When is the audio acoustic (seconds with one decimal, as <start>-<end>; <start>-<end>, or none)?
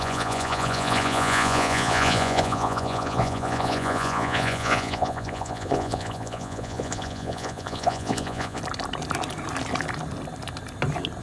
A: 8.6-11.2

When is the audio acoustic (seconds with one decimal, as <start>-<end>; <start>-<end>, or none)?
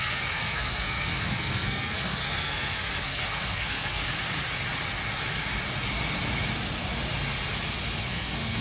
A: 4.0-8.1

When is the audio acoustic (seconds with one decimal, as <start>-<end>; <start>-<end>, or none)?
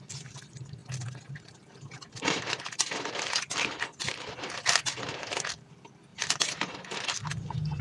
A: 0.0-7.8